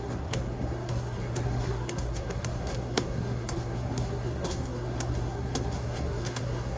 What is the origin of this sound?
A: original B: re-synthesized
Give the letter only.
B